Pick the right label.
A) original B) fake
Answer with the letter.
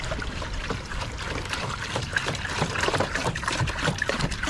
B